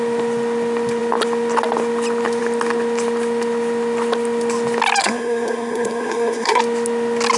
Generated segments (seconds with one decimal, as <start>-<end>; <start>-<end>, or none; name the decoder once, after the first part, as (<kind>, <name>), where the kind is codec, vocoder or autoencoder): 5.0-6.6 (codec, SNAC)

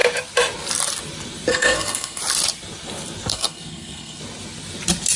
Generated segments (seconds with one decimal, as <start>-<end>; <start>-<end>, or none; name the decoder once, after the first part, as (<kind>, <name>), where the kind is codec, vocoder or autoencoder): 1.5-2.2 (codec, SNAC); 3.3-4.2

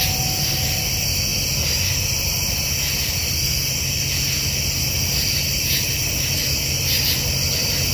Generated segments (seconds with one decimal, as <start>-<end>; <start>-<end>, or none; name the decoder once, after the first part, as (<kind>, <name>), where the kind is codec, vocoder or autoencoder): none

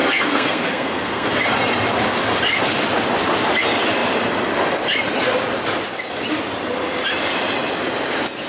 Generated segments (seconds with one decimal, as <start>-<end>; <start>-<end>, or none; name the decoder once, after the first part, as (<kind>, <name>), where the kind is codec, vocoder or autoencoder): 0.0-1.3 (codec, SNAC)

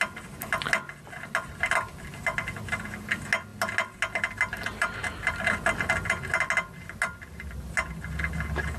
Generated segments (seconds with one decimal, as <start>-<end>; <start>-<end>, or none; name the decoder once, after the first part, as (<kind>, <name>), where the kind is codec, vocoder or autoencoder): none

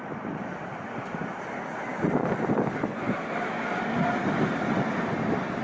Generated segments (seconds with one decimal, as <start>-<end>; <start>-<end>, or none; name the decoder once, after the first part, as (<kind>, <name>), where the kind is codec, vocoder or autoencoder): none